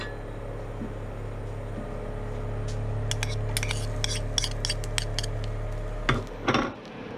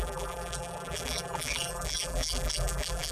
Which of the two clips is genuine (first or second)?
first